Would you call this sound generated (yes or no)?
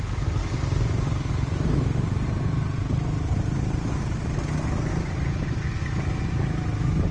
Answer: no